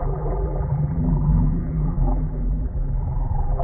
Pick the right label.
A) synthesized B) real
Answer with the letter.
A